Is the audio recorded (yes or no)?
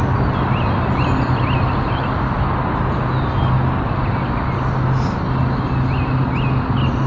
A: yes